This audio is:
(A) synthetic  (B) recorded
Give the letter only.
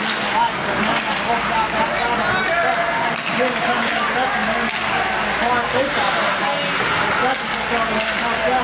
B